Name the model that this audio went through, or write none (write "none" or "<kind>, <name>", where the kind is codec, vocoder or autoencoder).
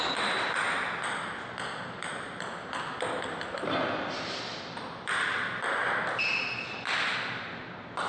none